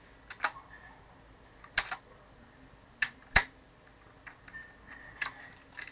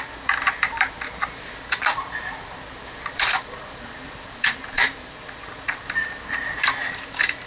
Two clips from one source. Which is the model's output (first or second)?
second